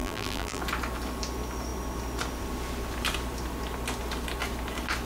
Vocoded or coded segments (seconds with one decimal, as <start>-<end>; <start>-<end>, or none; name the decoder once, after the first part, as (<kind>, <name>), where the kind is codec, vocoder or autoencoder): 0.0-0.6 (vocoder, BigVGAN v2)